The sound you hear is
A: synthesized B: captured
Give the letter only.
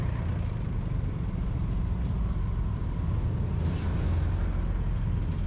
B